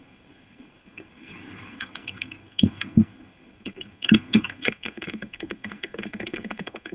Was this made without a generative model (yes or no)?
no